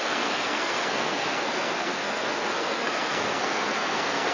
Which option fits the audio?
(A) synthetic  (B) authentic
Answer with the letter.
A